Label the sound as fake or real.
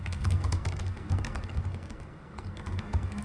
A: fake